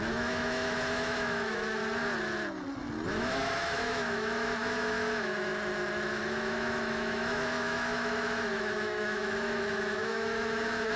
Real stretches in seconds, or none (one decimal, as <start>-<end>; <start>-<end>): 1.8-3.1; 5.5-6.2